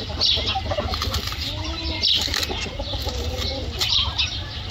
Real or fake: real